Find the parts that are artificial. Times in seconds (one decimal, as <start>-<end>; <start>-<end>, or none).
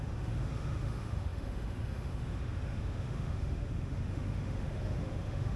0.0-5.6